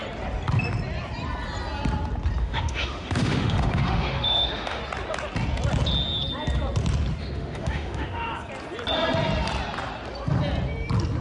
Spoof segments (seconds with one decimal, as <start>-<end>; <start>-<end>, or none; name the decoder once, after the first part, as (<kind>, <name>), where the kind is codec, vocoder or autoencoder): 2.4-4.8 (autoencoder, DAC-VAE); 7.2-8.3